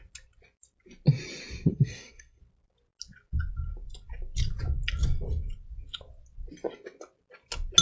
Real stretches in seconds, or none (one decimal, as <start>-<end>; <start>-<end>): 0.0-1.7; 2.4-7.8

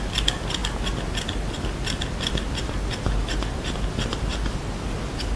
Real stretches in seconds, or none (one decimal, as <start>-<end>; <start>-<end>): 0.0-5.4

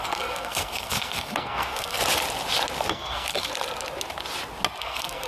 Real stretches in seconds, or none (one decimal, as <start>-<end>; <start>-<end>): 2.0-2.9; 3.5-4.8

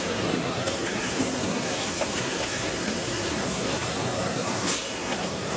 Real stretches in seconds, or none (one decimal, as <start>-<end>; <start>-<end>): none

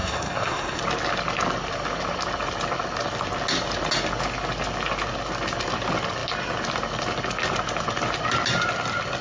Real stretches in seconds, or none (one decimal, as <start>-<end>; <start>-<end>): 0.8-9.2